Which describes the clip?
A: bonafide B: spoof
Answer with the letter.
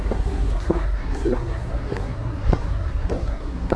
B